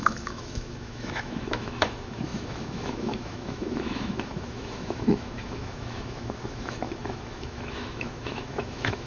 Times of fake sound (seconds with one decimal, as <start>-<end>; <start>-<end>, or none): 0.0-9.1